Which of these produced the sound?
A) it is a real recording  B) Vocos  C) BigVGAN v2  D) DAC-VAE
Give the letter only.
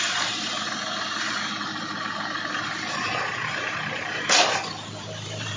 C